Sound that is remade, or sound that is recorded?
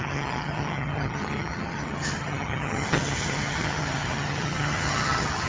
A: remade